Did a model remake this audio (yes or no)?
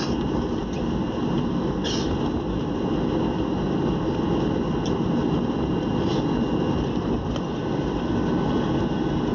no